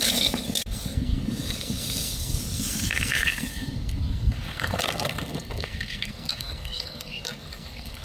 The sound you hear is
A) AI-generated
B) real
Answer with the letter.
A